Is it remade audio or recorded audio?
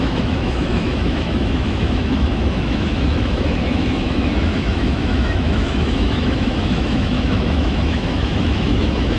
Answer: remade